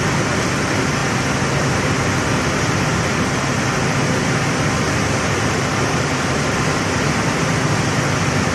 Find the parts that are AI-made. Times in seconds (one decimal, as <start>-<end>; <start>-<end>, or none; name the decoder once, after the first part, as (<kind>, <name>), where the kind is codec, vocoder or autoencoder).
0.0-1.0 (vocoder, BigVGAN v2); 4.9-8.5